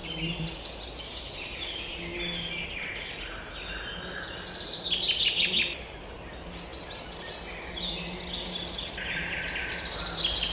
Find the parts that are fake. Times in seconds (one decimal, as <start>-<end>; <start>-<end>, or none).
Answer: none